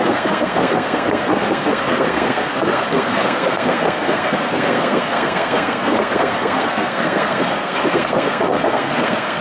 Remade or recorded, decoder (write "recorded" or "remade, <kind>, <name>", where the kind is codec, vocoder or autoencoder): remade, codec, SNAC